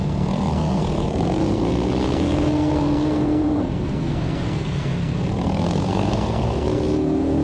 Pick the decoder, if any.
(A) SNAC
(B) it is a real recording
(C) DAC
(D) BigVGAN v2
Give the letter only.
A